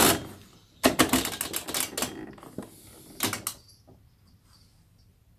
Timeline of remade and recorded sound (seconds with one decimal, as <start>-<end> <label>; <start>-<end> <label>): 0.0-0.6 recorded; 0.6-1.3 remade; 1.3-5.4 recorded